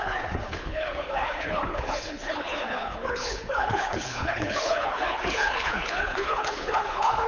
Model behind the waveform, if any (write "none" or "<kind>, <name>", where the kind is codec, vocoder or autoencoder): codec, HILCodec